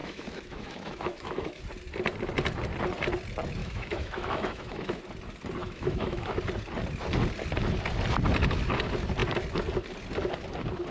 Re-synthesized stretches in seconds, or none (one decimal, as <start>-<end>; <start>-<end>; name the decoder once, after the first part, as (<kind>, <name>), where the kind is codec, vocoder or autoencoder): 0.0-1.6 (autoencoder, DAC-VAE); 3.6-5.0; 5.6-6.4